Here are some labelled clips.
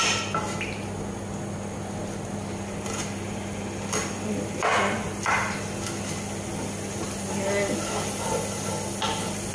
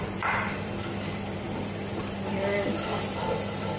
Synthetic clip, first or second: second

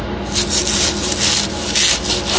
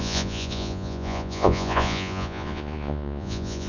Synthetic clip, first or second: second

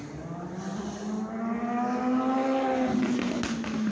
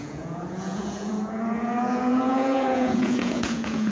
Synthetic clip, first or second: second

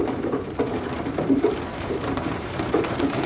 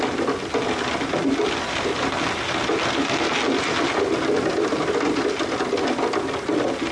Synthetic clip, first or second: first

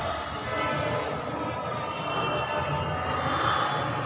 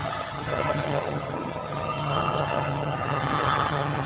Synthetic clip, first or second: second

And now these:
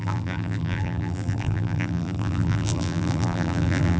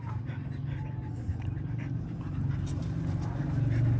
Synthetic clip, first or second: first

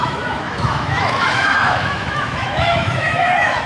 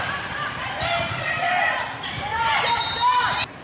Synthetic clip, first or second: first